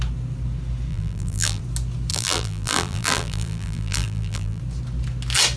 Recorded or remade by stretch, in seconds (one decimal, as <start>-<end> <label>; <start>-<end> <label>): 0.0-0.9 recorded; 0.9-1.6 remade; 1.6-2.1 recorded; 2.1-4.6 remade; 4.6-5.6 recorded